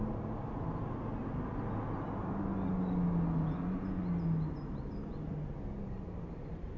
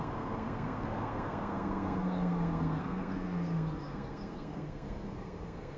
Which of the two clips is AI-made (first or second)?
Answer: second